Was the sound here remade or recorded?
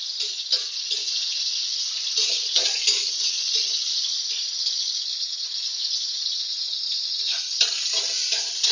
recorded